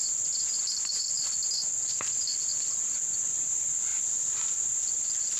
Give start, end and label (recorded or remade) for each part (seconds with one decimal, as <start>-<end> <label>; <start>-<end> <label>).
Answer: 0.0-1.0 remade; 1.0-3.9 recorded; 3.9-4.5 remade; 4.5-5.4 recorded